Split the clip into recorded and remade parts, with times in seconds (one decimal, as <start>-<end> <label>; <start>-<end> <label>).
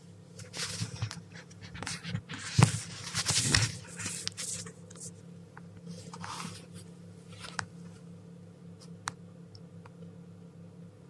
0.0-1.8 recorded; 1.8-2.6 remade; 2.6-11.1 recorded